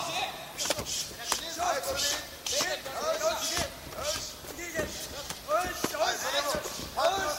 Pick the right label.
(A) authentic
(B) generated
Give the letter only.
B